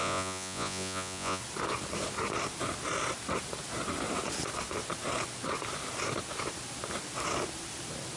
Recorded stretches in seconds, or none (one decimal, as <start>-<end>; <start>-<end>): 1.4-8.2